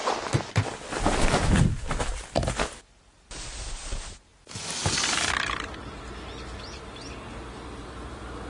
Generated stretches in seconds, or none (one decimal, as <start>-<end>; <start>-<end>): none